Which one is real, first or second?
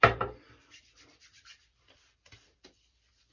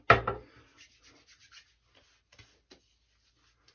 second